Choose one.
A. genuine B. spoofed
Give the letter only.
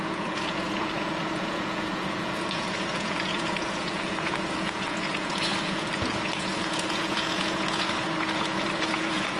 B